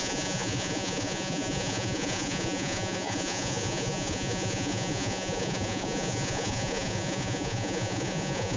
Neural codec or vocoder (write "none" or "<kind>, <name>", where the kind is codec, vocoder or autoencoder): vocoder, Vocos